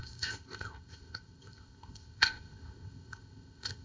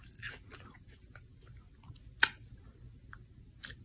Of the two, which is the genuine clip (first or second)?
second